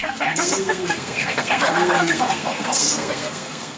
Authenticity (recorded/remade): remade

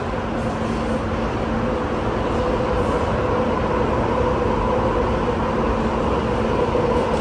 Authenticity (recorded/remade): recorded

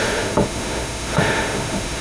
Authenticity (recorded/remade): remade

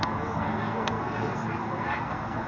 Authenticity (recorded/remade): remade